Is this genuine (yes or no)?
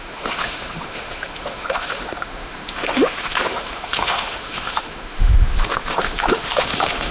no